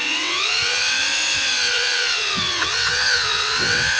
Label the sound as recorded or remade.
remade